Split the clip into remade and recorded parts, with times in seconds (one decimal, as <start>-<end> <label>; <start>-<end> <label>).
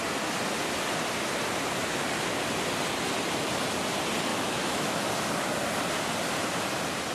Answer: 0.0-4.3 recorded; 4.3-5.1 remade; 5.1-7.1 recorded